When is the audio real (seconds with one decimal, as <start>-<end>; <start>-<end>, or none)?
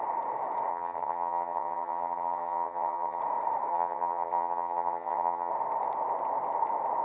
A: 0.0-0.7; 3.2-3.7; 5.5-7.0